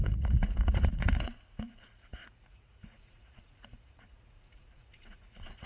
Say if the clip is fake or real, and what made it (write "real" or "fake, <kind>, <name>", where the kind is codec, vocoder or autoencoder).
fake, vocoder, Vocos